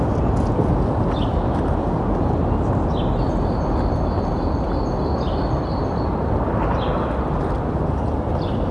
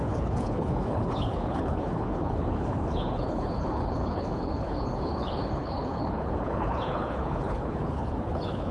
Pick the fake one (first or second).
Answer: second